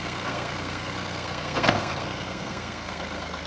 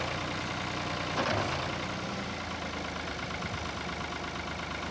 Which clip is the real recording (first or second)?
second